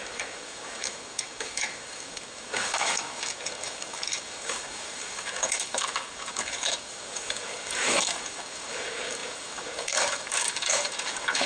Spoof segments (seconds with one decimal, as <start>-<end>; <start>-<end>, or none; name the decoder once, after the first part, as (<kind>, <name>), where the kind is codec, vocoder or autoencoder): 0.0-11.5 (codec, DAC)